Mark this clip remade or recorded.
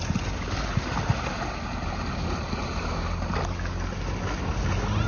recorded